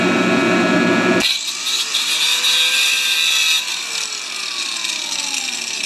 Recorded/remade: recorded